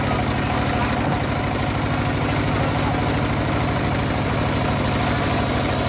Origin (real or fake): real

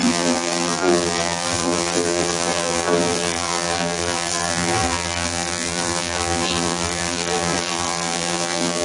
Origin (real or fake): fake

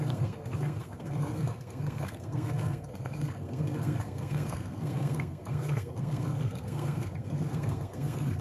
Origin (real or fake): fake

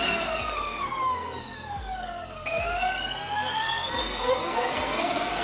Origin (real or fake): fake